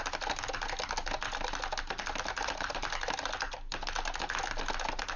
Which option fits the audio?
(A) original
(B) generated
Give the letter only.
A